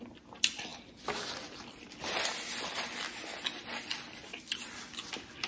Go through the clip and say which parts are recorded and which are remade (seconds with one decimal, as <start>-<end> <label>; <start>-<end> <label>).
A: 0.0-5.5 recorded